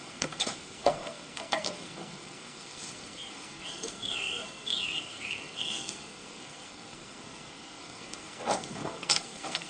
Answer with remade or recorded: remade